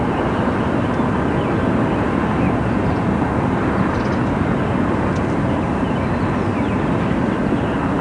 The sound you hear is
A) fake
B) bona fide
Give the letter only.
B